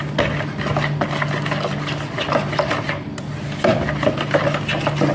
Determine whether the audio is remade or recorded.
recorded